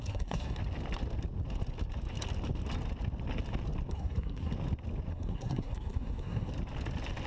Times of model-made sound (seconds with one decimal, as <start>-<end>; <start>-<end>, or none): 0.0-0.6; 3.9-4.5; 5.1-6.5